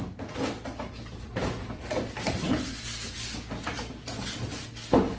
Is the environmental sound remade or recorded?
recorded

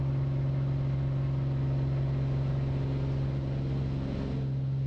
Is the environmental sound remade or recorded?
recorded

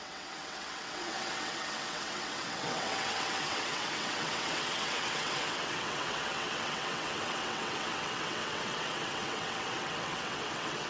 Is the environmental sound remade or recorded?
remade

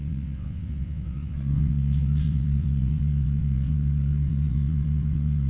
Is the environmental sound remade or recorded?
remade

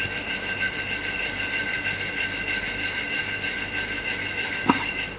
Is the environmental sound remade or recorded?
recorded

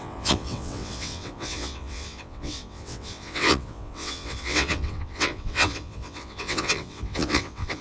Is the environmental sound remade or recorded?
remade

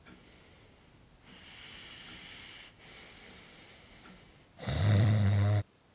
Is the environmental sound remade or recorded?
recorded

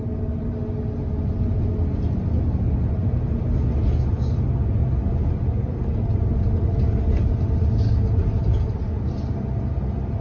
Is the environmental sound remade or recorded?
recorded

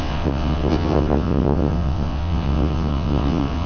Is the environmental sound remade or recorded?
remade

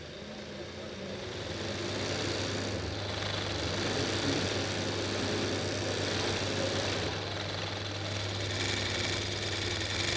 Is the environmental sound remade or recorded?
recorded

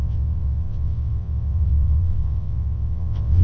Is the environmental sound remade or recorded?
remade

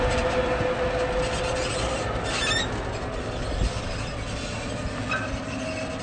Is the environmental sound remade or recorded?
recorded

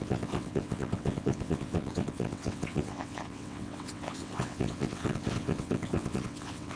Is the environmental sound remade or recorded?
remade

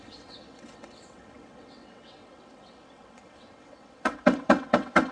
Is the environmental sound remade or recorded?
remade